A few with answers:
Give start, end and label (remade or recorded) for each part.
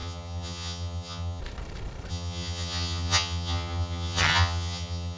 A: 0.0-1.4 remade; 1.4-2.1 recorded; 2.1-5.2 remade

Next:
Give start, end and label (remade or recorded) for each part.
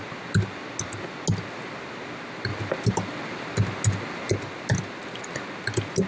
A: 0.0-6.1 recorded